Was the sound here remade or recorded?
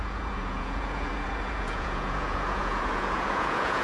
remade